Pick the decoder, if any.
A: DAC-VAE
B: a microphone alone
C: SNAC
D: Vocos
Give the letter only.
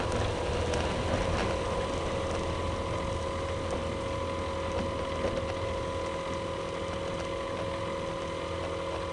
B